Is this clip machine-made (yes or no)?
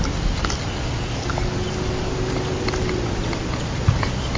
no